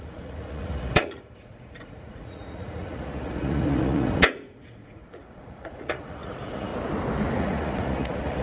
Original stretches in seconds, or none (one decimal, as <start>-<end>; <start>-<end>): 6.7-7.4